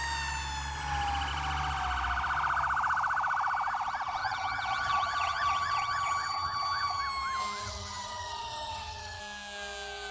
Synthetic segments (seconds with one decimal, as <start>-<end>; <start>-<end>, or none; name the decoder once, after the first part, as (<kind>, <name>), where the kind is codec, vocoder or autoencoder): 4.2-7.0 (vocoder, HiFi-GAN); 7.6-9.2